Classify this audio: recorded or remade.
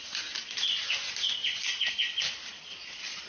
recorded